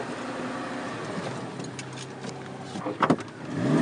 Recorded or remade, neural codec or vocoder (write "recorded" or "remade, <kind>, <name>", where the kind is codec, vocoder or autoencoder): recorded